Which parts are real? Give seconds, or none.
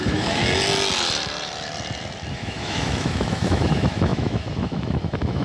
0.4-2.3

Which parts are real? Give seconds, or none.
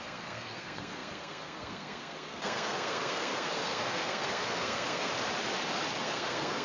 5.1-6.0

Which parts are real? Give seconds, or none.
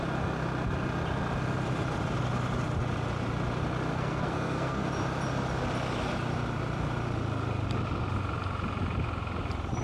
0.0-3.9; 4.9-9.8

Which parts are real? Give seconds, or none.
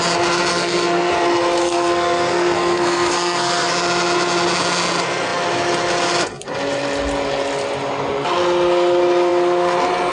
0.0-0.5; 1.1-1.6; 3.7-10.1